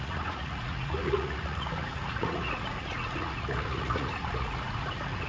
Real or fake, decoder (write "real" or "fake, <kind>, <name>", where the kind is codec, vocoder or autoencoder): fake, vocoder, Vocos